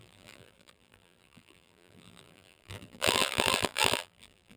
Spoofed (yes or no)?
yes